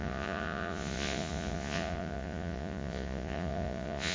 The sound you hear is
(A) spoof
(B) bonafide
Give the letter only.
A